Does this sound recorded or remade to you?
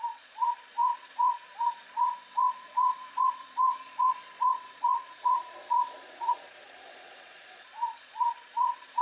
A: remade